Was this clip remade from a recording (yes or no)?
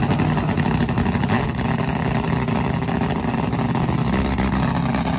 no